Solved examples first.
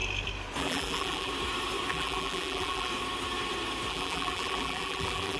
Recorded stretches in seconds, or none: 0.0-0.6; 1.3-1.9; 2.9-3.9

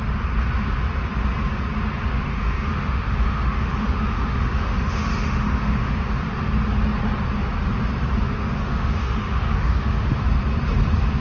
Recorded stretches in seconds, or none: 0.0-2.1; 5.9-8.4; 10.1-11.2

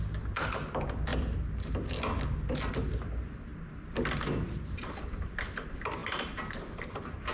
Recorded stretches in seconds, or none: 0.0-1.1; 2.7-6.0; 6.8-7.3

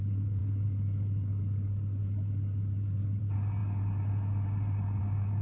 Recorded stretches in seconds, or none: 0.0-5.4

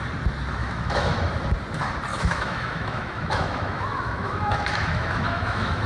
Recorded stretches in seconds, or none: 0.0-0.6; 1.2-2.1

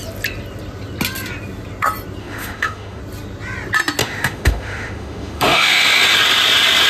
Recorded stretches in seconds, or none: 0.0-2.2; 3.0-4.0; 5.8-6.9

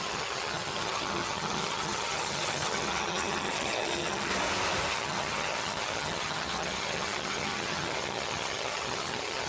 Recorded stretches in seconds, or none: 4.3-4.9

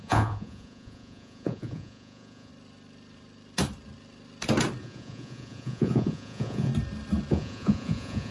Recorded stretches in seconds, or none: 2.5-4.8; 6.7-7.3